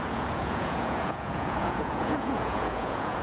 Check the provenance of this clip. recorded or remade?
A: remade